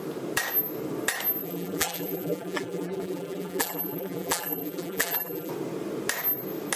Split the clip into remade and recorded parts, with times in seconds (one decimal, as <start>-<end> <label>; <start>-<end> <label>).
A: 0.0-1.4 recorded; 1.4-5.5 remade; 5.5-6.8 recorded